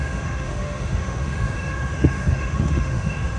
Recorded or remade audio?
remade